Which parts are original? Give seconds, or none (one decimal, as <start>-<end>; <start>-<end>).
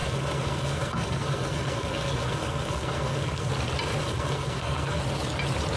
3.5-4.0; 5.0-5.8